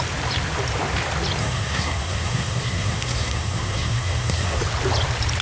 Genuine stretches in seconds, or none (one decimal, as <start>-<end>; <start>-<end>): 0.0-1.4; 4.6-5.4